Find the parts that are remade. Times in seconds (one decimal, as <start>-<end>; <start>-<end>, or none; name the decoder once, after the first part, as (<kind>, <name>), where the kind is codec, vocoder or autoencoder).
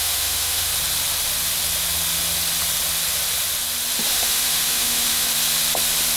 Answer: 0.0-0.7 (autoencoder, DAC-VAE); 4.1-5.3